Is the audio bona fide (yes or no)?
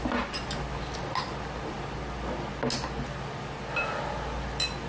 yes